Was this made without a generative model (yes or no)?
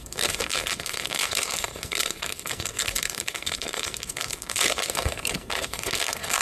no